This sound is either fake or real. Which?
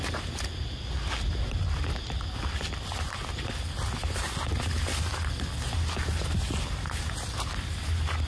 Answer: real